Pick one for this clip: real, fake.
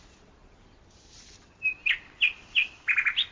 real